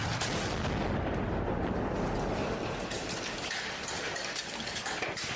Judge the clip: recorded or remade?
recorded